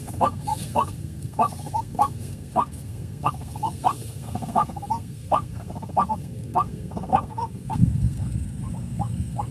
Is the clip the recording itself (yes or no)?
no